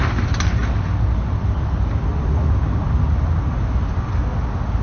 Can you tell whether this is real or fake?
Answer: real